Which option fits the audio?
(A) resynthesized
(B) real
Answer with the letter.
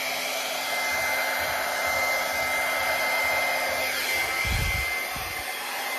B